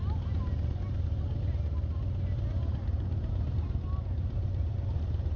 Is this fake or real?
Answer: real